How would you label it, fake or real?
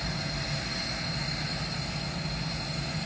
real